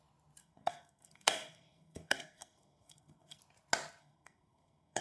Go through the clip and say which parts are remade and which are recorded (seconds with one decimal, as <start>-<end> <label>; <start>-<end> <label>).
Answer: 0.0-0.4 recorded; 0.4-3.4 remade; 3.4-4.0 recorded; 4.0-5.0 remade

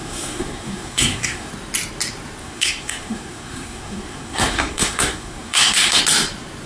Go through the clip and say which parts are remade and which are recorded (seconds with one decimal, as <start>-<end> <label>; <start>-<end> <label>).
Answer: 0.0-1.5 remade; 1.5-2.4 recorded; 2.4-6.0 remade; 6.0-6.7 recorded

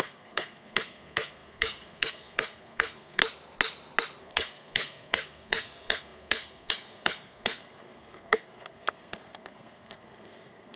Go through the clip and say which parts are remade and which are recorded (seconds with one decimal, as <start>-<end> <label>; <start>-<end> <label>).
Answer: 0.0-3.2 remade; 3.2-4.2 recorded; 4.2-10.8 remade

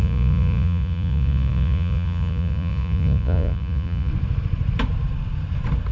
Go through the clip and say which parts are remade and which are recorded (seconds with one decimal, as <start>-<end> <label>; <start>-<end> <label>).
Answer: 0.0-4.1 remade; 4.1-5.9 recorded